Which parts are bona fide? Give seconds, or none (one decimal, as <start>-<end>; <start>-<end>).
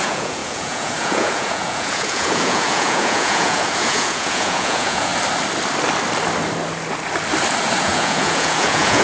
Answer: 5.1-7.8